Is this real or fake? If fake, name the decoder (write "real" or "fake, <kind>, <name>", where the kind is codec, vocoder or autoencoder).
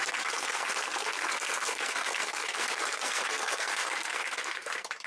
fake, codec, SNAC